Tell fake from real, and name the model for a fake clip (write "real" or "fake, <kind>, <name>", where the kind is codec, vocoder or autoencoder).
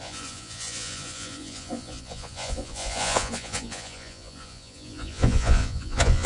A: fake, vocoder, Vocos